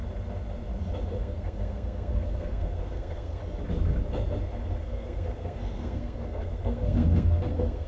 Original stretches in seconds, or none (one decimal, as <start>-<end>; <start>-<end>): 0.0-1.2; 3.4-4.8